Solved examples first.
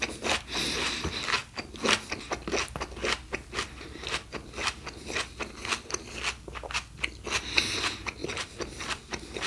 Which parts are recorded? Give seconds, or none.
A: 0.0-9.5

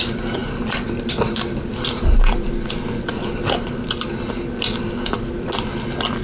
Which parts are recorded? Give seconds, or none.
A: 0.0-6.2

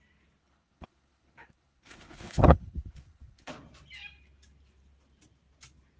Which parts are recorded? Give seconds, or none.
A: 0.0-0.4; 3.5-6.0